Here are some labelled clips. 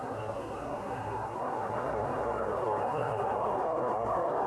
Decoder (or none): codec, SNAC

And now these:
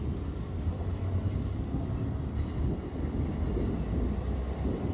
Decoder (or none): none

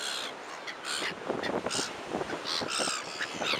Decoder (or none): none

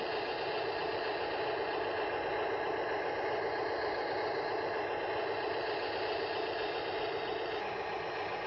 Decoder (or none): none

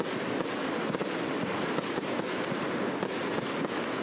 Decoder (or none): none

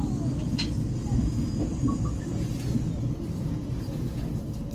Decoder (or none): none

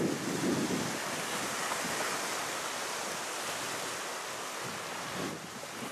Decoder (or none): none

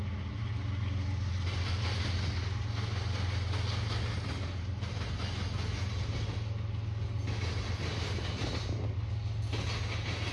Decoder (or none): none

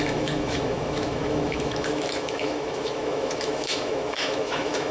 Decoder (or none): autoencoder, DAC-VAE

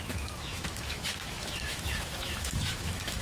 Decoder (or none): autoencoder, DAC-VAE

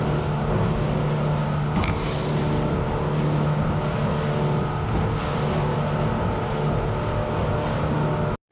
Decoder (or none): none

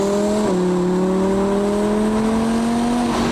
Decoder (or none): none